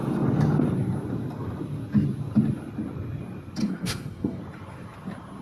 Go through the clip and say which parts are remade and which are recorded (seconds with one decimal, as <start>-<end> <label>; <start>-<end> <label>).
0.0-3.6 recorded; 3.6-4.4 remade; 4.4-5.4 recorded